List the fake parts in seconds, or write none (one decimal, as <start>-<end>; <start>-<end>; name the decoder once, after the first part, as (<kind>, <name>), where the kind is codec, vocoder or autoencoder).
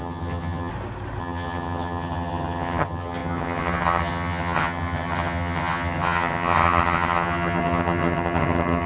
0.0-0.7 (vocoder, HiFi-GAN); 1.2-8.9